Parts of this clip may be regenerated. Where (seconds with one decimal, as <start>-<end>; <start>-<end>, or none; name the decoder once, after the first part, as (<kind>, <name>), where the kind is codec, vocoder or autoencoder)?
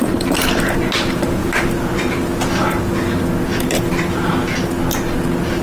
none